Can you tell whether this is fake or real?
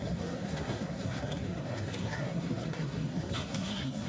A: fake